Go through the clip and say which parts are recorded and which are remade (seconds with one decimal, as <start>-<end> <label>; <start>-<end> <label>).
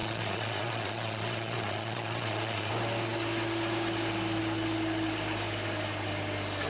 0.0-2.7 remade; 2.7-6.7 recorded